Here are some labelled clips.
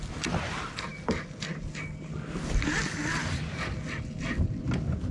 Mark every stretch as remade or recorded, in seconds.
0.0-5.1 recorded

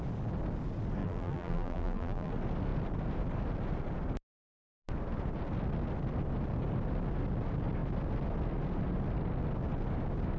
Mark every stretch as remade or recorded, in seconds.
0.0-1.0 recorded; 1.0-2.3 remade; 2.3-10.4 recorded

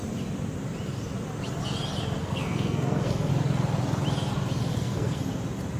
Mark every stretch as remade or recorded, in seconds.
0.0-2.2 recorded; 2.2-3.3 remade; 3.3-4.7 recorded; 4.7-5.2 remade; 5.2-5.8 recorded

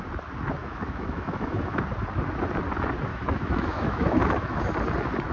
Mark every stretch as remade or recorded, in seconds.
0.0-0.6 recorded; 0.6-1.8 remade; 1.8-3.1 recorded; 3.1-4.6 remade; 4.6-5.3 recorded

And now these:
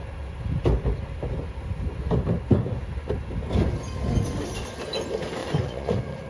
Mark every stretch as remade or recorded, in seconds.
0.0-5.4 recorded; 5.4-6.3 remade

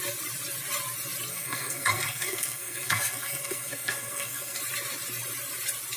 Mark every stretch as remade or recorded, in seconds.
0.0-1.3 recorded; 1.3-4.6 remade; 4.6-6.0 recorded